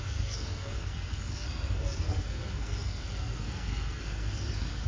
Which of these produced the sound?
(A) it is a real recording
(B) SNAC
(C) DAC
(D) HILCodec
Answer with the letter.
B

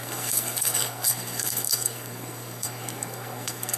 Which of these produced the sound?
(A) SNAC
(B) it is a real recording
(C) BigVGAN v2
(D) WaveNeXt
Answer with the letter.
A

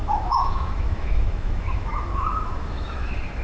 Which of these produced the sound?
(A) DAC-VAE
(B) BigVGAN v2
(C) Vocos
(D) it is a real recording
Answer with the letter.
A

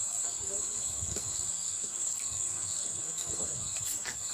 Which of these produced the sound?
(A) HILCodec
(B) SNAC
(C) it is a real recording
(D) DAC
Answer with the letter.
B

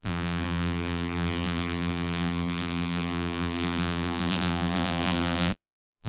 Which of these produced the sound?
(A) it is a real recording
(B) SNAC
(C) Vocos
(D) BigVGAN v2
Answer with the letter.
D